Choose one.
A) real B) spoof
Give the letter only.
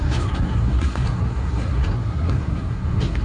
B